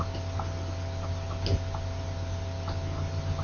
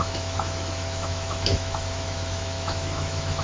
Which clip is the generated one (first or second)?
second